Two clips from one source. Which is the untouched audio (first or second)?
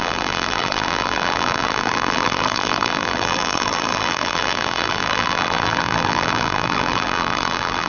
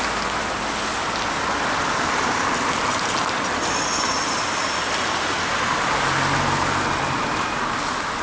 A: second